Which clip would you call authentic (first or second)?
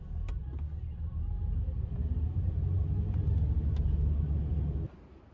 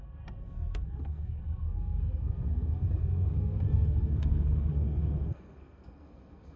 first